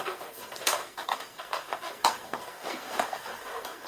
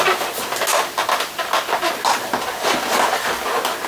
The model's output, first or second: first